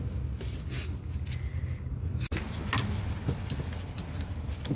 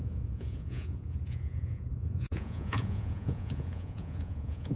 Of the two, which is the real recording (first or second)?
first